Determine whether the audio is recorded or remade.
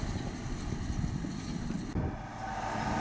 recorded